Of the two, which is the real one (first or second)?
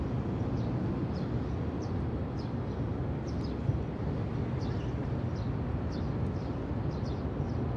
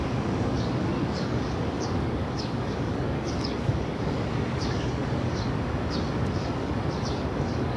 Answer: first